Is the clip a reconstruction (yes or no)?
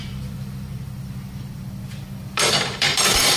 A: yes